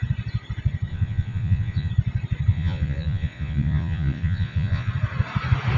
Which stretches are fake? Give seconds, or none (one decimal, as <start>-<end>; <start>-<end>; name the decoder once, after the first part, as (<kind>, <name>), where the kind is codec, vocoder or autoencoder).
0.9-1.9 (vocoder, Vocos); 2.5-4.9